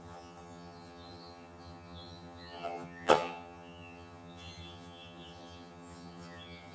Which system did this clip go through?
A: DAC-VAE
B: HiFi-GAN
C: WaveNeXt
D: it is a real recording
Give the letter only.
B